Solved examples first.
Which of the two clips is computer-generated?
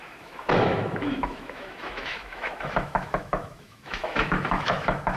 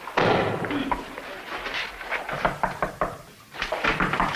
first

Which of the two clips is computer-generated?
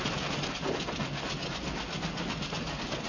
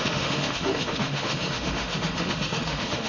second